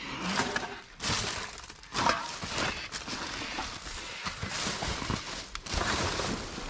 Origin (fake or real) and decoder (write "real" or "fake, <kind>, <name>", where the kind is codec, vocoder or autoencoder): real